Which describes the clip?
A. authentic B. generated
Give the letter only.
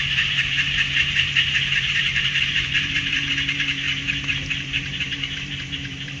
B